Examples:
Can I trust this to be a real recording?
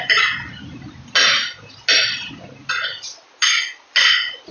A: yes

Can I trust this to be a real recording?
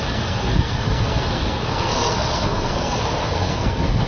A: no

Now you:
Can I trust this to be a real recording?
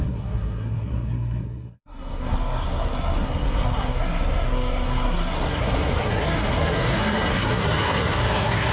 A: no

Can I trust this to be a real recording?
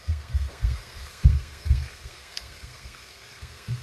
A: no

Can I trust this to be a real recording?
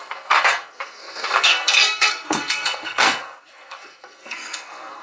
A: no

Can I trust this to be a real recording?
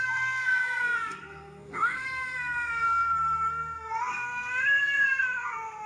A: no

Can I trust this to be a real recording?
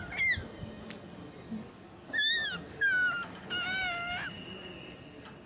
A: yes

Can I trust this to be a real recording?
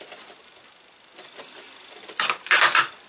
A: yes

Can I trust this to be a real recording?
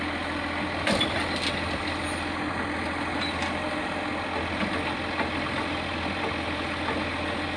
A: yes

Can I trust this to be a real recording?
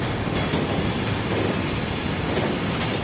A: yes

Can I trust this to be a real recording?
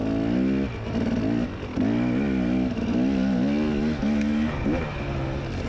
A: yes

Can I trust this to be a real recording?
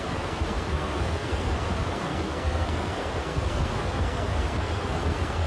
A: no